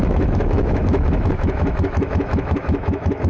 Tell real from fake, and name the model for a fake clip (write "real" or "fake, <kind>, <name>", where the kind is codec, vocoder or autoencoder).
fake, autoencoder, DAC-VAE